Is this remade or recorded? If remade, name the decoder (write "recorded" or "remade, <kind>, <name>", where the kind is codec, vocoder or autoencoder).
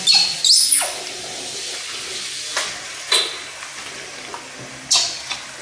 recorded